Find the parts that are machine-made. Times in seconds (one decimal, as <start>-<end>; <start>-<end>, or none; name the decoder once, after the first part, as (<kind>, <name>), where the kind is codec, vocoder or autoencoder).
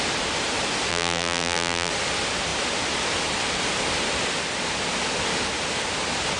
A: 0.9-1.9 (vocoder, BigVGAN v2)